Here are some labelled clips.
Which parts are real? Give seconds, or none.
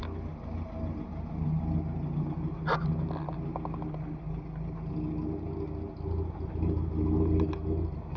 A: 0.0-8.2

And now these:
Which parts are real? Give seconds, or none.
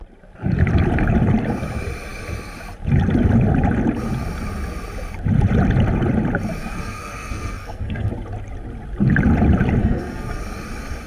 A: 0.0-6.6; 8.1-9.8; 10.4-11.1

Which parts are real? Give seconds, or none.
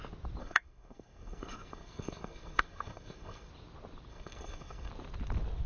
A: 0.0-0.4; 3.5-4.1; 4.9-5.7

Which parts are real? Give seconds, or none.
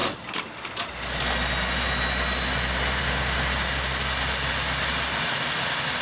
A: 0.0-6.0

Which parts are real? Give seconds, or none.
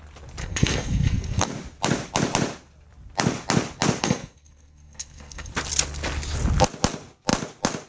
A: 0.0-0.4; 1.5-4.0; 5.5-7.9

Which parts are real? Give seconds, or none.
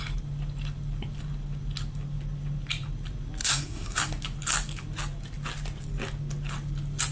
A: 0.0-3.4; 4.0-7.1